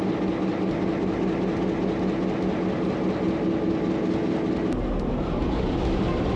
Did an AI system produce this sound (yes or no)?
no